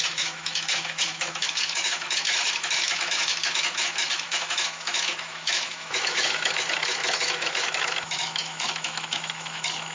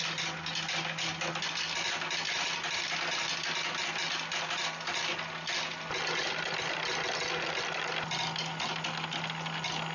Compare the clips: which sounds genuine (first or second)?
second